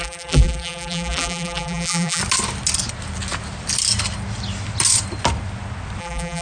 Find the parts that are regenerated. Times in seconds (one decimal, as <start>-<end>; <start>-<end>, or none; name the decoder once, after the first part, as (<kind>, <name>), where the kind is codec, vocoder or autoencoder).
0.0-2.2 (vocoder, BigVGAN v2); 6.0-6.4